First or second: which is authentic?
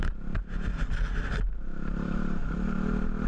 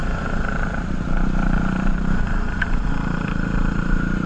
first